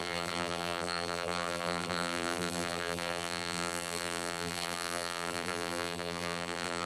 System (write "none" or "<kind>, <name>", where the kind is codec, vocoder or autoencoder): vocoder, BigVGAN v2